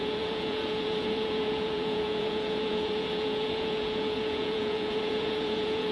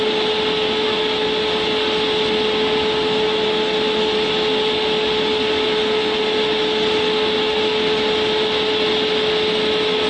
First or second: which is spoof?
first